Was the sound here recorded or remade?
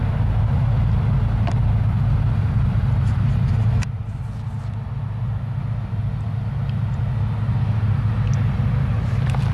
recorded